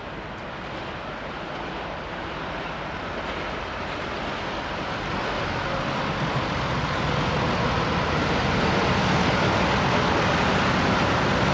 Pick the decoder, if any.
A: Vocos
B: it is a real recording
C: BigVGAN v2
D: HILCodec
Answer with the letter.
B